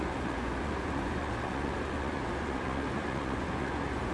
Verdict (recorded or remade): remade